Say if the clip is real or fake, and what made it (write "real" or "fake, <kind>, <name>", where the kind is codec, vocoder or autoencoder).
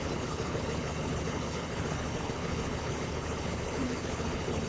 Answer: fake, codec, HILCodec